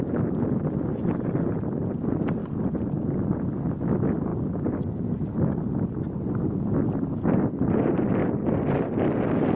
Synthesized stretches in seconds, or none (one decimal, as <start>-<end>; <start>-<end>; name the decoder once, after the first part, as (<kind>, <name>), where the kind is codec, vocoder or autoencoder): none